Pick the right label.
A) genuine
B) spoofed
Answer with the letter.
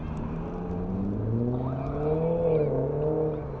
A